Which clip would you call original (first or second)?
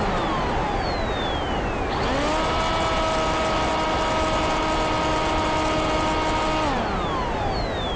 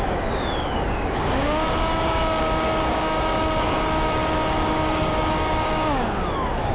first